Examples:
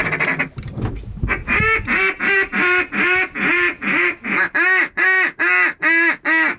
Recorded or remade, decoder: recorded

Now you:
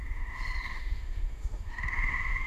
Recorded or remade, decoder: remade, autoencoder, DAC-VAE